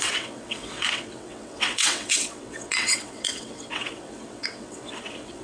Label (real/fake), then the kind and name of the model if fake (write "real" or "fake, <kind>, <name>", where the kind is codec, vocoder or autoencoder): fake, vocoder, WaveNeXt